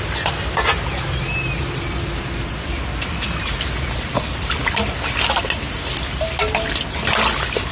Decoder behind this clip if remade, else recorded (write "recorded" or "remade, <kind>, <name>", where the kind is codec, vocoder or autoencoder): recorded